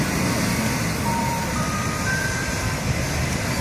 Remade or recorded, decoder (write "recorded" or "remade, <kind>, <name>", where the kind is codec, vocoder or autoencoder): recorded